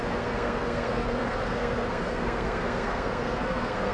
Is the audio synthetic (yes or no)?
yes